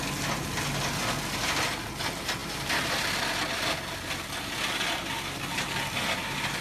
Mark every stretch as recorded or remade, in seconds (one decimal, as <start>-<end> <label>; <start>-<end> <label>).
0.0-6.6 recorded